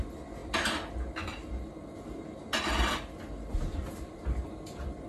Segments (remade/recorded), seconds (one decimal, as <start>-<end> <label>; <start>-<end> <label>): 0.0-5.1 recorded